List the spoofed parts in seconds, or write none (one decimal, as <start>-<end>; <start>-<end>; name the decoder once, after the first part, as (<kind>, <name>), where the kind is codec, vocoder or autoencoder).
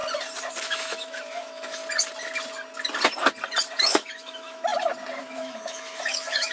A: 0.6-1.8 (autoencoder, DAC-VAE); 3.8-4.7; 5.2-6.5